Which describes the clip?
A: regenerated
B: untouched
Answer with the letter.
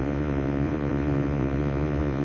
A